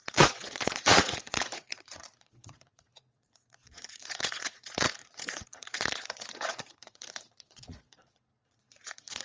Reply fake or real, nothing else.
fake